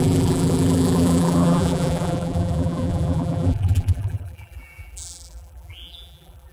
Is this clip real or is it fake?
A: fake